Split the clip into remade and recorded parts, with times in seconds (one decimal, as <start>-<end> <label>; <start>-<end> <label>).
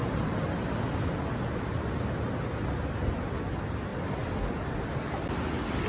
0.0-5.9 recorded